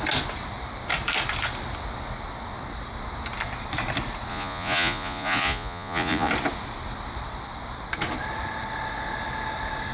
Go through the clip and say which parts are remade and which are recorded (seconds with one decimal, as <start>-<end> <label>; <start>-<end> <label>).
0.0-4.3 recorded; 4.3-6.3 remade; 6.3-9.9 recorded